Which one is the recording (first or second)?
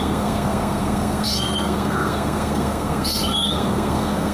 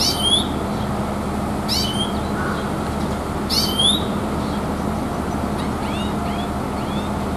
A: second